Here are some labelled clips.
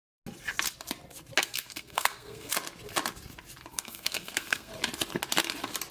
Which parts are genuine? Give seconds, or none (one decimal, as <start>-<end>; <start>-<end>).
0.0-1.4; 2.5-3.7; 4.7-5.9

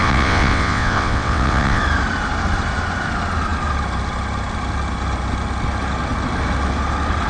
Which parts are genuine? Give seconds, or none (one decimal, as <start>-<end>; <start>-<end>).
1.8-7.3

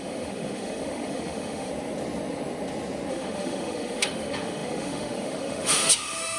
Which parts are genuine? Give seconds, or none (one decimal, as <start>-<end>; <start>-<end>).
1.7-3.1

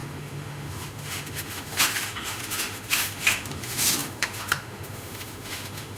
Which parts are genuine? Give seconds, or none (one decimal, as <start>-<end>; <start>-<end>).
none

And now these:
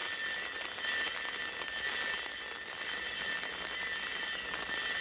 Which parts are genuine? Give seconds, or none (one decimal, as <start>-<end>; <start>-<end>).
0.0-5.0

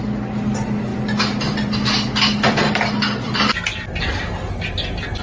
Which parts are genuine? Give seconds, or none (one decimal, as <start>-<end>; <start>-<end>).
0.0-5.2

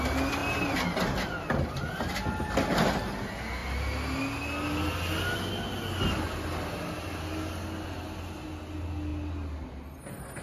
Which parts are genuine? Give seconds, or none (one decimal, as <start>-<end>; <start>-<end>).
0.0-10.4

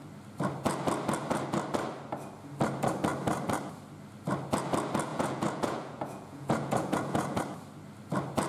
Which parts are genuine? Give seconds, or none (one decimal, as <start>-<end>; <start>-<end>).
0.0-5.1; 7.4-8.5